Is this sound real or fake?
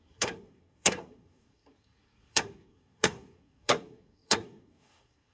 fake